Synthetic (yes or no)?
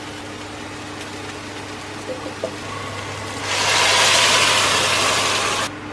no